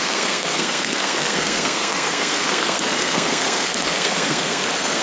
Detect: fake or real fake